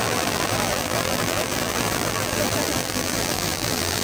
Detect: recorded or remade remade